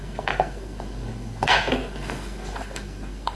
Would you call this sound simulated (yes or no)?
yes